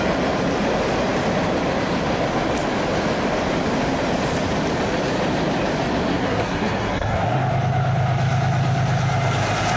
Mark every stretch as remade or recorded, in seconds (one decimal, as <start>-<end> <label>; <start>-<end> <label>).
0.0-6.1 recorded; 6.1-7.4 remade; 7.4-9.8 recorded